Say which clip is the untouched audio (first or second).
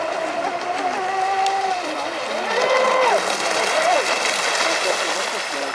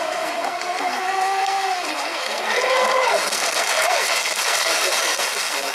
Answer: first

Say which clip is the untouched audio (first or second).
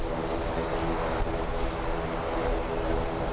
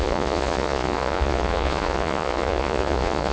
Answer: first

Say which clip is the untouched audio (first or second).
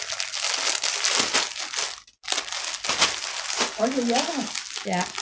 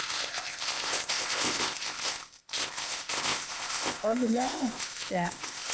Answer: first